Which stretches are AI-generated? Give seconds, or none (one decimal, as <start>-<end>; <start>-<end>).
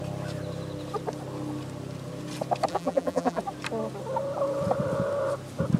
2.7-3.4